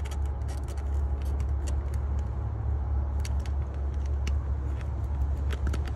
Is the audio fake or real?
real